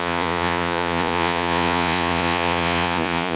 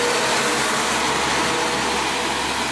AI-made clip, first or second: first